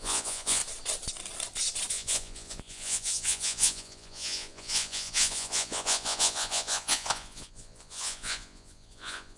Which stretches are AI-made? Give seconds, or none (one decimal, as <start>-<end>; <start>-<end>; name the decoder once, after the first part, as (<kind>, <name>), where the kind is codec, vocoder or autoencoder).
0.0-0.6 (vocoder, Vocos); 1.9-9.4